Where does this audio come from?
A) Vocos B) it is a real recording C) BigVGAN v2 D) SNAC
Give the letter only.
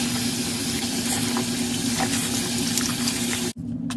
B